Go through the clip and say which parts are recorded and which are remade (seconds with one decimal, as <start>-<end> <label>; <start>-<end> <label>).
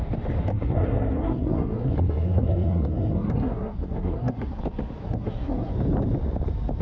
0.0-0.5 recorded; 0.5-4.6 remade; 4.6-5.0 recorded; 5.0-5.7 remade; 5.7-6.8 recorded